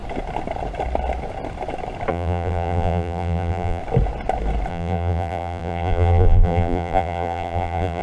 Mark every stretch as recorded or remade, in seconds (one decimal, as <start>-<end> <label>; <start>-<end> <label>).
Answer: 0.0-2.1 recorded; 2.1-3.8 remade; 3.8-4.7 recorded; 4.7-8.0 remade